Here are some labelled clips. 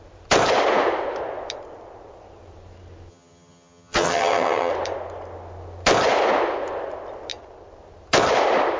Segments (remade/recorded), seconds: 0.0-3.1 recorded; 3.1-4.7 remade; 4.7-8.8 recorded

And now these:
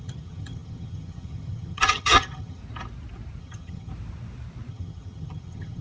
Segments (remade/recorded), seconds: 0.0-2.6 remade; 2.6-3.4 recorded; 3.4-3.9 remade; 3.9-4.7 recorded; 4.7-5.8 remade

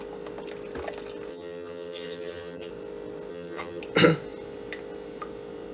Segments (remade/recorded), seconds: 0.0-1.3 recorded; 1.3-2.7 remade; 2.7-3.3 recorded; 3.3-3.8 remade; 3.8-5.7 recorded

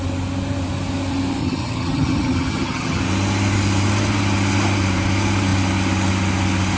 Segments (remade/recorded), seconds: 0.0-1.4 recorded; 1.4-3.0 remade; 3.0-6.8 recorded

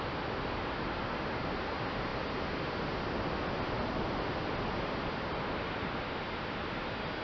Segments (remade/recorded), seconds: 0.0-7.2 recorded

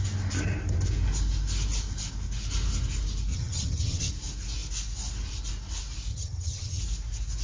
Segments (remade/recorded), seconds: 0.0-3.3 recorded; 3.3-4.1 remade; 4.1-6.1 recorded; 6.1-6.8 remade; 6.8-7.4 recorded

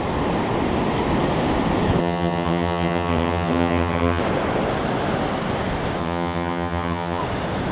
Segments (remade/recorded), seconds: 0.0-2.0 recorded; 2.0-4.2 remade; 4.2-6.0 recorded; 6.0-7.2 remade; 7.2-7.7 recorded